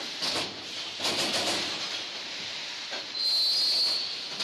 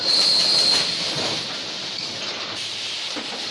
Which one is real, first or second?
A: first